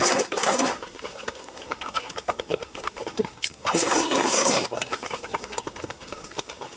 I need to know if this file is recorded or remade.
remade